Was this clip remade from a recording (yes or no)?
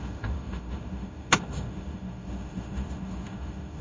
yes